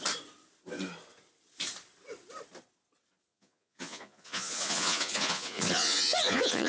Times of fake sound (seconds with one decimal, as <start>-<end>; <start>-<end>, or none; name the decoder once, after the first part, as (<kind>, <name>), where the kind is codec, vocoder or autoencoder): 3.3-6.7 (vocoder, Vocos)